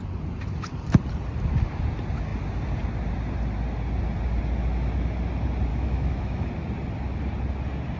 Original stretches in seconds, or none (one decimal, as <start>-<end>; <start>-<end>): 0.0-5.7; 6.5-8.0